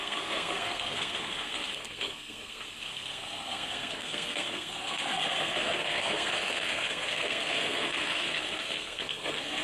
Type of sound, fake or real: fake